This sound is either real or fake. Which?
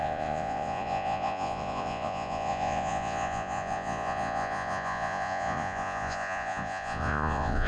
fake